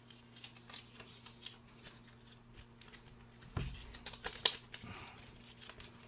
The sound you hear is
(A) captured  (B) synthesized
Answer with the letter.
A